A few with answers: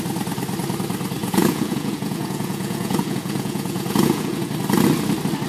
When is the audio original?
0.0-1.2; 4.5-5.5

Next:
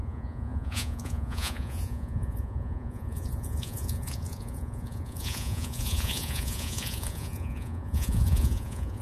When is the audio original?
none

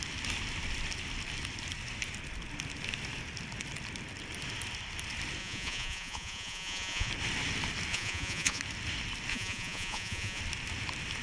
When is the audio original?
0.0-5.4; 7.1-7.9; 8.6-9.3; 10.4-11.2

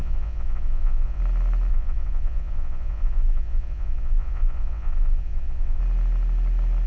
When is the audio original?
1.2-1.7; 5.8-6.9

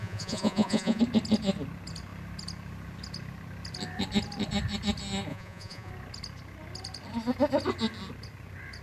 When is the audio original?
1.0-5.3; 5.9-8.8

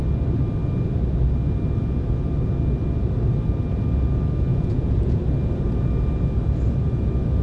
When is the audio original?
0.0-4.5; 5.2-7.4

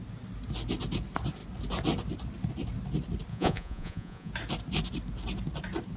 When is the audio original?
0.0-3.3; 4.3-6.0